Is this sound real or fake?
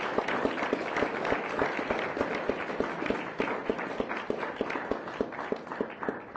real